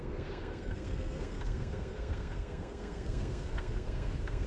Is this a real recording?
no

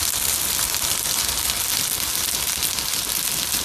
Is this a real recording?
yes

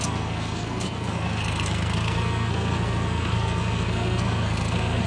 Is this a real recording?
no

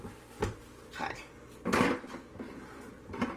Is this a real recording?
yes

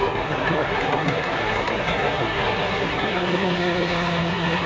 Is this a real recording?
no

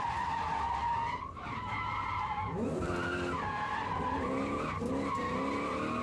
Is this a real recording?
yes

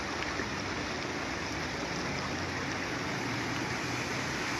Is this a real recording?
yes